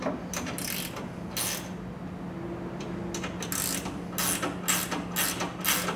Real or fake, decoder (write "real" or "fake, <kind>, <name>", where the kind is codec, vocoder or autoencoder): real